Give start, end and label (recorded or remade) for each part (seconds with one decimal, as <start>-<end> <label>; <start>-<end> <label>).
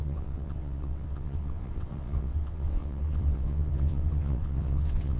0.0-5.2 remade